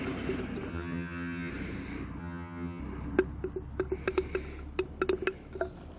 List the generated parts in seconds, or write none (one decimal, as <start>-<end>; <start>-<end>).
0.7-1.5; 2.2-2.8